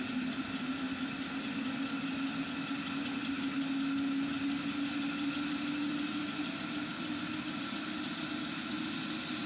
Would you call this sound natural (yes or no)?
yes